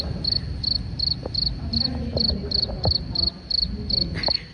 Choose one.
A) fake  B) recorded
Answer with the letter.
B